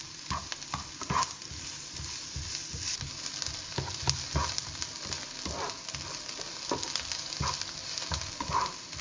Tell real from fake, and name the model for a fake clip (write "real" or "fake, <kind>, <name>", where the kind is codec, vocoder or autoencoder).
real